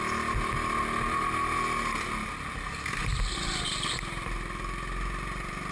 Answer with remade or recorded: recorded